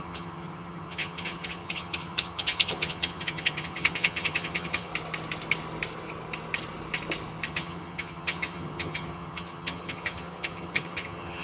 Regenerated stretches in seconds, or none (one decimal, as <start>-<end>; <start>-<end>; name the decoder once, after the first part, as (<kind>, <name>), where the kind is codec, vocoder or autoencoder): 0.0-4.9 (vocoder, HiFi-GAN); 7.5-11.4